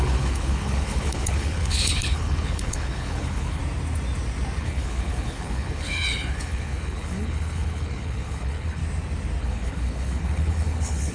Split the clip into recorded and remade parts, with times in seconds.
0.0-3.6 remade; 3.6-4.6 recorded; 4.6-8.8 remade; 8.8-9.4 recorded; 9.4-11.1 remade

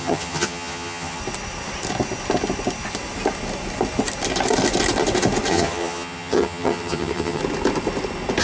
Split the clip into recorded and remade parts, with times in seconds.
0.0-1.2 remade; 1.2-5.5 recorded; 5.5-7.4 remade; 7.4-8.4 recorded

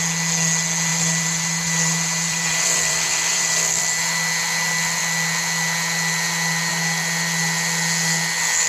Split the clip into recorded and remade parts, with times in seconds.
0.0-0.9 recorded; 0.9-3.8 remade; 3.8-8.7 recorded

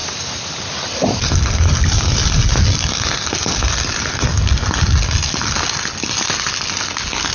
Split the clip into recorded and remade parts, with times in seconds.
0.0-7.3 recorded

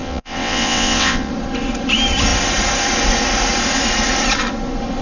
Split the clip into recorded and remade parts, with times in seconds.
0.0-1.3 remade; 1.3-5.0 recorded

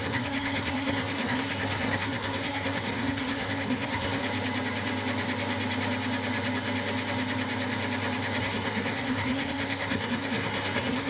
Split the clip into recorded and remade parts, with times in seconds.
0.0-4.2 remade; 4.2-8.4 recorded; 8.4-11.1 remade

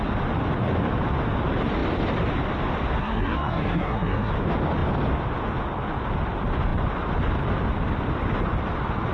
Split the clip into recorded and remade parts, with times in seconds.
0.0-3.0 recorded; 3.0-4.3 remade; 4.3-9.1 recorded

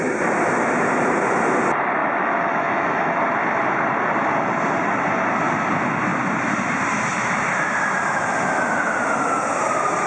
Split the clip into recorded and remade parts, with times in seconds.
0.0-2.0 recorded; 2.0-3.2 remade; 3.2-10.1 recorded